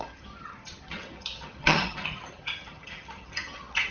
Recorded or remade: remade